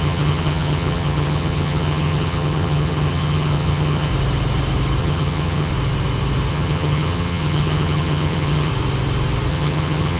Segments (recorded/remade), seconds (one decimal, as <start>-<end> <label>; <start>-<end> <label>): 0.0-4.1 remade; 4.1-5.0 recorded; 5.0-5.7 remade; 5.7-6.5 recorded; 6.5-8.7 remade; 8.7-9.5 recorded; 9.5-10.2 remade